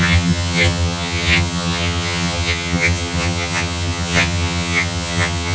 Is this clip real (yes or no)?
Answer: no